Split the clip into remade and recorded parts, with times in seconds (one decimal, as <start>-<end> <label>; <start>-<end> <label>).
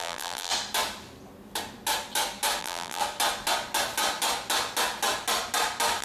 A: 0.0-0.5 remade; 0.5-2.6 recorded; 2.6-3.0 remade; 3.0-6.0 recorded